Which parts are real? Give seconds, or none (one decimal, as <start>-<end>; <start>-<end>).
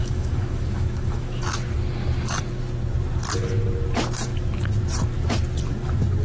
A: 1.4-6.2